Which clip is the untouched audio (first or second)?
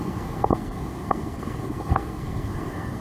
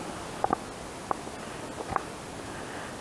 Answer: second